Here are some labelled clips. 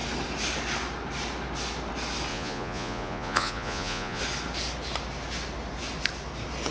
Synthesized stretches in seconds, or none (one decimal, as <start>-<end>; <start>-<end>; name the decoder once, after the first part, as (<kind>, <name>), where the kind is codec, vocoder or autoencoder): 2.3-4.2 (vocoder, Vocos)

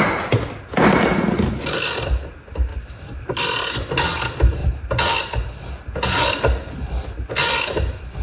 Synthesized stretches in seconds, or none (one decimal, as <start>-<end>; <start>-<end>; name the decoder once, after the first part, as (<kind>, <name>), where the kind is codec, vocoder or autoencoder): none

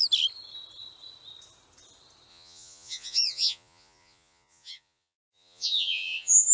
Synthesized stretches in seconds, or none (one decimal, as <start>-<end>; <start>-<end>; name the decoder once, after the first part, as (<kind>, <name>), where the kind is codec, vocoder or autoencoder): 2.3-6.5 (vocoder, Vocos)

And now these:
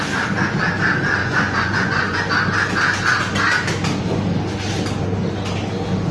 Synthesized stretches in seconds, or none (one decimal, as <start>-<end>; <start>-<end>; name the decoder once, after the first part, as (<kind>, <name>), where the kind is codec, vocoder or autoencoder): 1.2-2.2 (vocoder, Vocos)

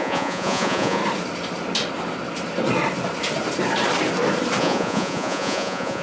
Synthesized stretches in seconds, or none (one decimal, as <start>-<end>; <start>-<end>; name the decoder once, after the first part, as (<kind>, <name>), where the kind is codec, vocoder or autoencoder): 0.0-1.0 (vocoder, Vocos); 4.6-6.0

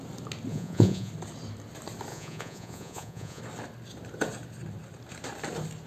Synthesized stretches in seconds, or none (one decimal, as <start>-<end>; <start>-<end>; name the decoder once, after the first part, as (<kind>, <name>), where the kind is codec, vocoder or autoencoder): 0.5-1.1 (vocoder, Vocos); 2.1-3.4

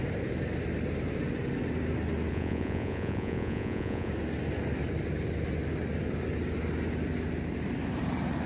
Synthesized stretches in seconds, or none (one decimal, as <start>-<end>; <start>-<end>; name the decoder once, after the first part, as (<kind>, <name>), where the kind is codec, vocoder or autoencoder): 2.3-4.1 (vocoder, Vocos)